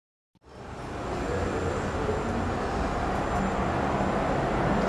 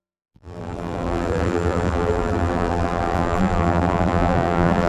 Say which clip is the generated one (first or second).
second